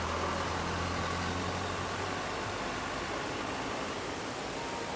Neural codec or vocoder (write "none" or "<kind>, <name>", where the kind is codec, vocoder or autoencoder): none